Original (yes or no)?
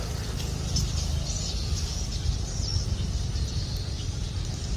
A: yes